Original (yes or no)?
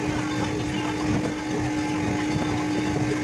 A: yes